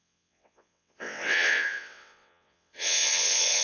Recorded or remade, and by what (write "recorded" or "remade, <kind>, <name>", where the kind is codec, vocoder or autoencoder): remade, vocoder, WaveNeXt